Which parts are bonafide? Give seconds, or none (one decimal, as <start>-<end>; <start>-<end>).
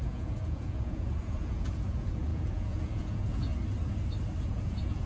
3.5-4.4